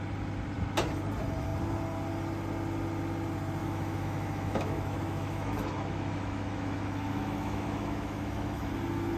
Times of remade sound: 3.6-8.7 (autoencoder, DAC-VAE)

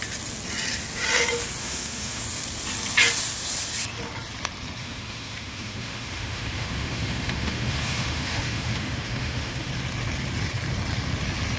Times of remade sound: 1.6-2.2 (autoencoder, DAC-VAE); 4.8-9.7

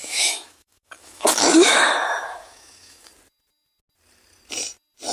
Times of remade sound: 0.0-3.1 (autoencoder, DAC-VAE)

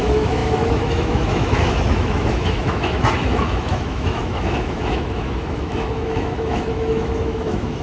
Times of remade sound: 0.0-7.8 (autoencoder, DAC-VAE)

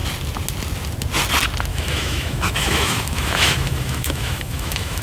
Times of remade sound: 1.7-5.0 (autoencoder, DAC-VAE)

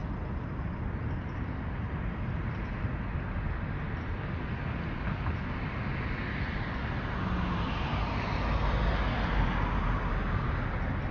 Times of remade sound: none